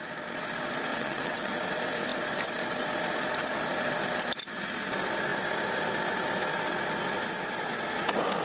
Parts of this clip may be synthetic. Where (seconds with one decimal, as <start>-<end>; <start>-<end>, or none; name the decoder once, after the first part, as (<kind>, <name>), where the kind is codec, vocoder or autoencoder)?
0.9-1.6 (vocoder, WaveNeXt)